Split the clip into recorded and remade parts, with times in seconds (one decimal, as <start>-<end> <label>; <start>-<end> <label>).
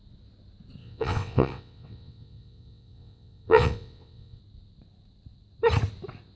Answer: 0.0-0.8 recorded; 0.8-4.4 remade; 4.4-6.4 recorded